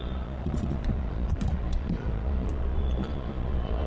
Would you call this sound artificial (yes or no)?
yes